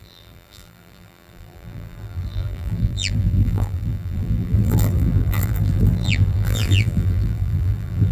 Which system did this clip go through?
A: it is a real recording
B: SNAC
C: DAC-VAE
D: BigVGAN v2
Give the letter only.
D